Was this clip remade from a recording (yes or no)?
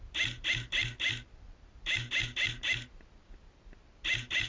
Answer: no